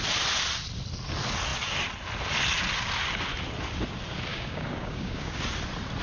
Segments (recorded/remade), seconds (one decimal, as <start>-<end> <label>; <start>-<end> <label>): 0.0-4.3 recorded; 4.3-5.4 remade; 5.4-6.0 recorded